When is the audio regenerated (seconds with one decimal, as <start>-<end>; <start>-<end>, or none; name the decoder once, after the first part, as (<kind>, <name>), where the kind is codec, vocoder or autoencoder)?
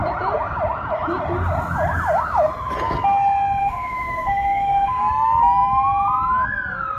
3.6-5.1 (autoencoder, DAC-VAE)